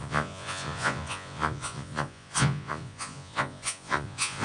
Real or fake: fake